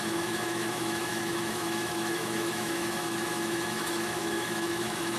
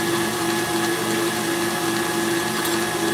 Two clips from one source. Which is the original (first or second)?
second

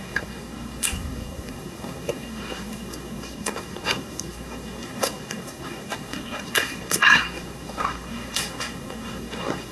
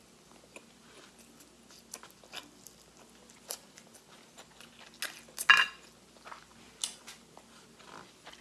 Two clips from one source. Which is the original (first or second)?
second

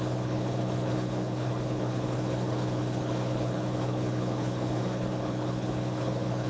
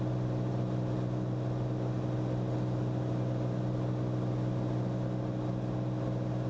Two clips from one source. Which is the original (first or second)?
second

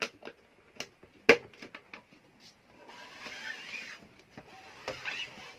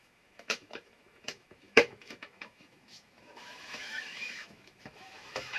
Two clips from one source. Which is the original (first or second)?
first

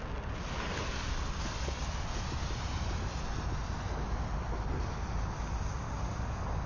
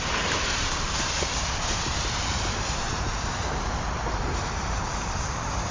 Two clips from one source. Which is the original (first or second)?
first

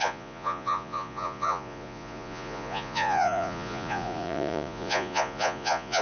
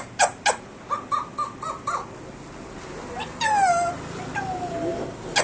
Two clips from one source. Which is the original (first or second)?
second